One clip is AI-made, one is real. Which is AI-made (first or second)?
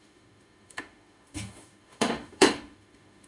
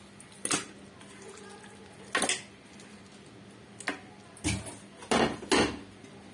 first